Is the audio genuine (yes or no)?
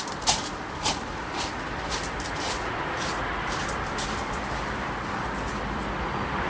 yes